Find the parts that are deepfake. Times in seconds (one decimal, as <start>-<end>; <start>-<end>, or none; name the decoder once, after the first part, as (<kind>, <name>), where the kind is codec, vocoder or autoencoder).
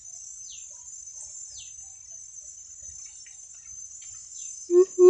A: 4.2-5.1 (autoencoder, DAC-VAE)